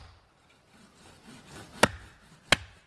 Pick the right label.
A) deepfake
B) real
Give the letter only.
B